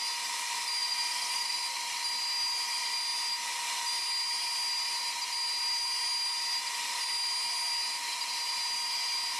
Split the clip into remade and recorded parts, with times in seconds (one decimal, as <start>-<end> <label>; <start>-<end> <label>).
0.0-0.8 recorded; 0.8-1.6 remade; 1.6-9.4 recorded